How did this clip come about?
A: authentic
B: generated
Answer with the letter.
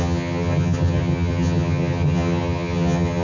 B